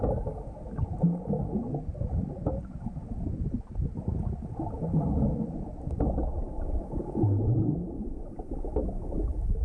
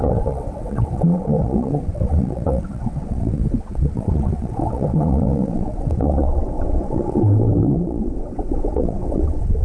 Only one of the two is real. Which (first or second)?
first